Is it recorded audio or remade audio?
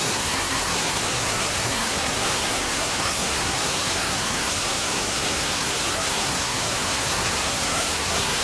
remade